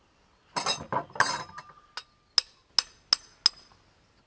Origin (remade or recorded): recorded